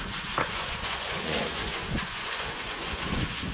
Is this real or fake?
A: fake